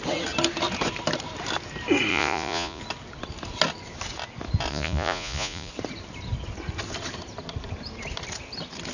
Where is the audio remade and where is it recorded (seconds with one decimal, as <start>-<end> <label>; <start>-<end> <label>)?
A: 0.0-2.1 recorded; 2.1-2.8 remade; 2.8-4.7 recorded; 4.7-5.7 remade; 5.7-8.9 recorded